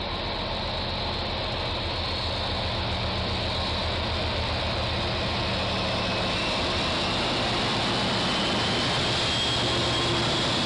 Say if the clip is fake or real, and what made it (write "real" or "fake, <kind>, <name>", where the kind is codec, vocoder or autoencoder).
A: real